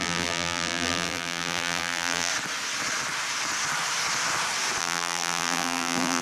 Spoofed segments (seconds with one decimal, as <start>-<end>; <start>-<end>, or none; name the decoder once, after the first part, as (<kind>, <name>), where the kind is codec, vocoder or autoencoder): 0.0-2.3 (vocoder, BigVGAN v2); 4.8-6.2